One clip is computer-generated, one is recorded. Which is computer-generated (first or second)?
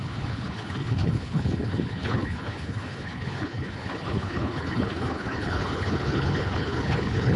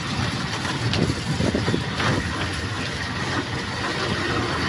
first